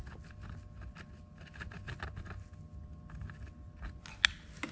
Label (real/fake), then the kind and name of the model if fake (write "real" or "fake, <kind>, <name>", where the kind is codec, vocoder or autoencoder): real